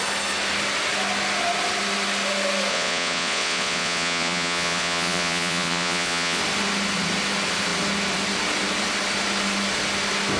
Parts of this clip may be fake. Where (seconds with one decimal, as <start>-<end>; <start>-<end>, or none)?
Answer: 2.7-6.4